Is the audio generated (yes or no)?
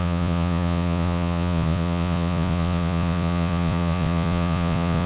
yes